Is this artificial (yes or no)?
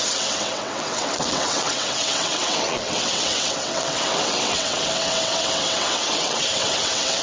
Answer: yes